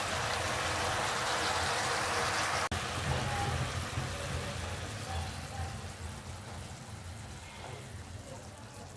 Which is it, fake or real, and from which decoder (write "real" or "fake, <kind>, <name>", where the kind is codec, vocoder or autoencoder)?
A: real